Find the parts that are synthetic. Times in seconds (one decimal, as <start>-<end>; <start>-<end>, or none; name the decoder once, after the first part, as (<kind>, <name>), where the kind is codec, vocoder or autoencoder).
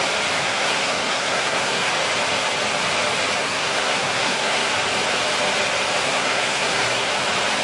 0.4-1.9 (codec, SNAC); 3.4-4.7; 6.0-7.1